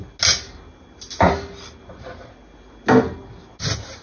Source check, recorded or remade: recorded